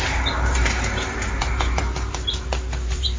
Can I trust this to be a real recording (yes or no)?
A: no